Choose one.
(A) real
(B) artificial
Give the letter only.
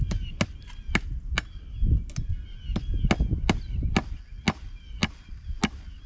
A